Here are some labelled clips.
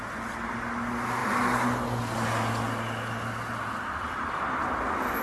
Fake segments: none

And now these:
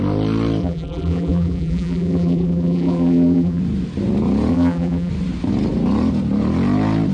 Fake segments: 0.6-3.6 (vocoder, BigVGAN v2); 4.5-5.1